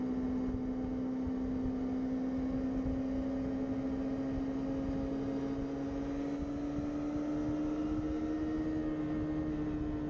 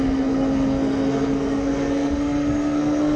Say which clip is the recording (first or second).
first